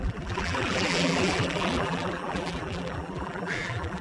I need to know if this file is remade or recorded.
remade